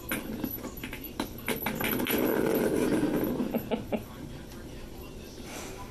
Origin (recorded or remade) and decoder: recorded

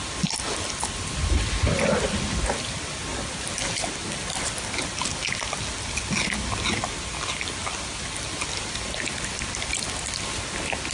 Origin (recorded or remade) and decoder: recorded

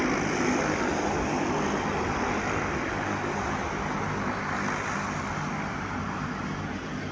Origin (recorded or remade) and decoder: recorded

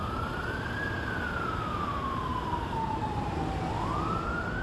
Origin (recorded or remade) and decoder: recorded